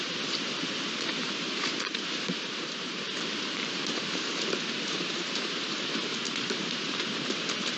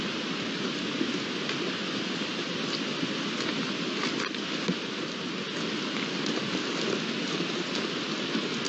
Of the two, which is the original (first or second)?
second